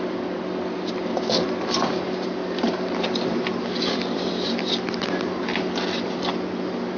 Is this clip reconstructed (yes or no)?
no